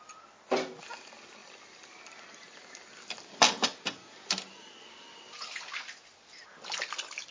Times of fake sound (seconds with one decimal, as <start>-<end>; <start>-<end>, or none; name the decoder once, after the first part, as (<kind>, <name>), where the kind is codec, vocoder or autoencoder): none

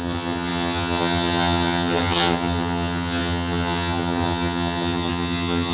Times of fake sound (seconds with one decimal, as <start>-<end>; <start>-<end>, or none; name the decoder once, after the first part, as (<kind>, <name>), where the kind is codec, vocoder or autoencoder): 0.0-5.7 (vocoder, HiFi-GAN)

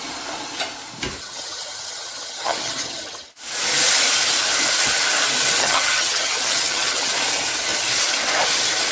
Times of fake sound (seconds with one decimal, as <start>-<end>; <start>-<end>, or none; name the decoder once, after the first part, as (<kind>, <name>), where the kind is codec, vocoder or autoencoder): 1.2-3.3 (vocoder, HiFi-GAN); 5.6-7.1

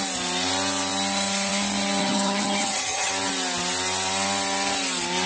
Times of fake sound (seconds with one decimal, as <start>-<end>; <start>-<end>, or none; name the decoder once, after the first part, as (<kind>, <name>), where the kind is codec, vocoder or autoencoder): 2.0-3.1 (vocoder, HiFi-GAN)